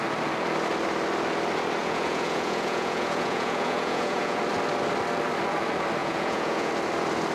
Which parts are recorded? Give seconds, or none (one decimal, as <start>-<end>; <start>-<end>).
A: 0.0-1.8; 4.4-6.0; 6.7-7.3